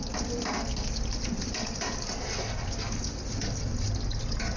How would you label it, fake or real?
real